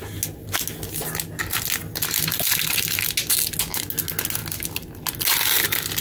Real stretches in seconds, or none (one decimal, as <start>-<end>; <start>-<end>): 0.0-6.0